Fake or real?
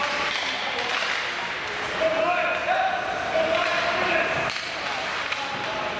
real